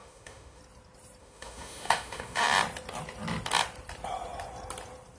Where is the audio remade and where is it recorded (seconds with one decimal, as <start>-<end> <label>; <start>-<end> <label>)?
0.0-0.6 remade; 0.6-1.2 recorded; 1.2-2.4 remade; 2.4-5.2 recorded